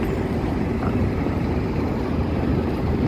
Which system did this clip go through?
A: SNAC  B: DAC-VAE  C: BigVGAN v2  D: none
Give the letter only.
C